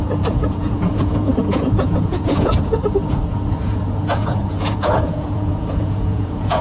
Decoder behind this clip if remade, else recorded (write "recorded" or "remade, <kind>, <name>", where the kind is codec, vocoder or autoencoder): remade, vocoder, Vocos